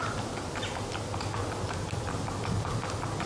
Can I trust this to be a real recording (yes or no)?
yes